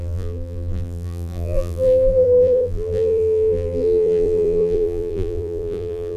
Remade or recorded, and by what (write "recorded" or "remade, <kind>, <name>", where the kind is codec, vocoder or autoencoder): remade, vocoder, BigVGAN v2